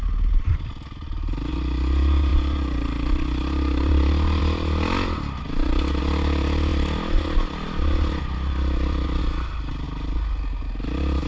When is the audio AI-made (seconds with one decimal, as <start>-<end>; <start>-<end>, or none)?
none

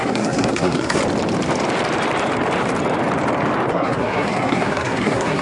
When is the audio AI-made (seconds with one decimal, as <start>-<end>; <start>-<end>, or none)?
0.0-1.0; 3.7-5.4

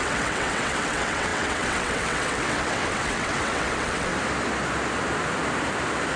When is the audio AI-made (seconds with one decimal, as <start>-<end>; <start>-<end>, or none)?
0.0-4.1

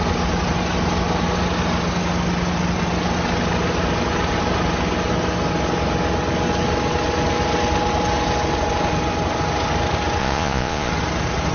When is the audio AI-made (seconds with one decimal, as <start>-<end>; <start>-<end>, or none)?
10.2-10.9

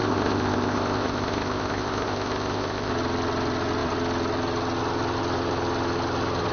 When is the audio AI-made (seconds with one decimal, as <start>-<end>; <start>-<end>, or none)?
0.0-2.9

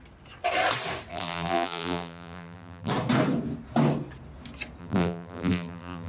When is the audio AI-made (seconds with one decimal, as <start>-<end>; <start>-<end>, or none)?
1.1-2.9; 4.8-6.1

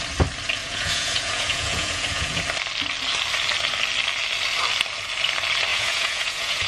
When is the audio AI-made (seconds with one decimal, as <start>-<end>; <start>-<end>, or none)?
0.6-2.4; 5.7-6.7

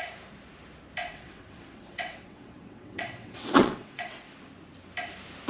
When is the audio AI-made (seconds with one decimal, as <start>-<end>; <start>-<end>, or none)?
1.0-4.3